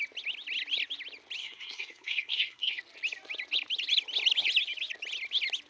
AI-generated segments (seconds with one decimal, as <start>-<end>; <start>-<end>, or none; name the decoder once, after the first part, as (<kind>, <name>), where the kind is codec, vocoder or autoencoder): 1.4-2.8 (codec, SNAC)